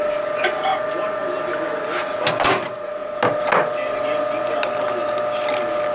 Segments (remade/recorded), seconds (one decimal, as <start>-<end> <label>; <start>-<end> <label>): 0.0-5.9 recorded